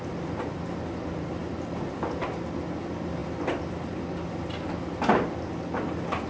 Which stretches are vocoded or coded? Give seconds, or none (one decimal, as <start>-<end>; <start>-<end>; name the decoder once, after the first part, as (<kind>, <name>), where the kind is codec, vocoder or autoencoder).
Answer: none